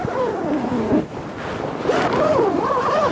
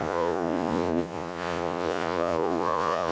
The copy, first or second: second